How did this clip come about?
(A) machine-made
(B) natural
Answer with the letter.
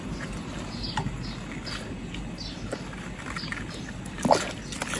B